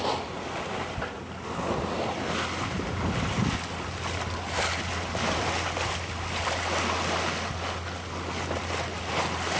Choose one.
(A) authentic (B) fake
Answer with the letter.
A